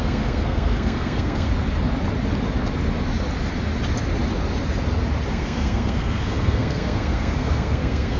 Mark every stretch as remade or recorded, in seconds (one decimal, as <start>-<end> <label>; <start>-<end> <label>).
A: 0.0-1.5 remade; 1.5-5.3 recorded; 5.3-8.2 remade